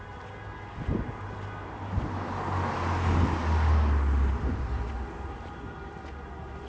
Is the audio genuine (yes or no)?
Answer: yes